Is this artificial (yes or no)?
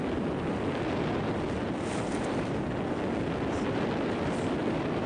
no